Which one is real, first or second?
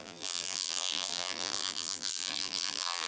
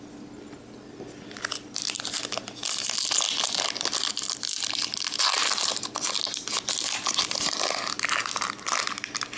second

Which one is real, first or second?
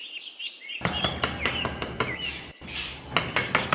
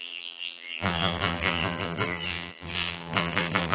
first